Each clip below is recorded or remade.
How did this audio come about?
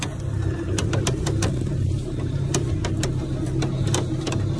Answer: remade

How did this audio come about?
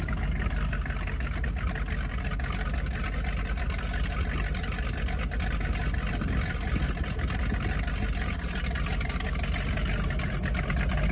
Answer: recorded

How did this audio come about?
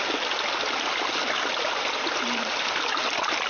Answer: recorded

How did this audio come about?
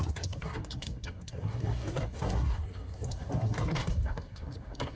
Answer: remade